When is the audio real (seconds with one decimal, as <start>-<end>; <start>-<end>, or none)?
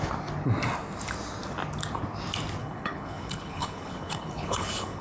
0.0-2.6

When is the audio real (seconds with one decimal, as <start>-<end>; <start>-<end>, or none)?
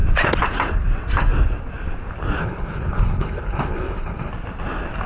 0.0-2.4; 4.3-5.1